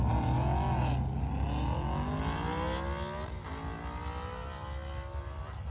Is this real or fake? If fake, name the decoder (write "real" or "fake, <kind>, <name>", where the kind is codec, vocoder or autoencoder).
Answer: real